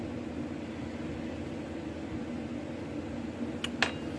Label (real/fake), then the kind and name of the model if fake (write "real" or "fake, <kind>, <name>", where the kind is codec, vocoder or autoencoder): real